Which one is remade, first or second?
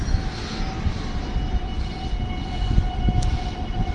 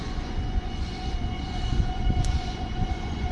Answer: second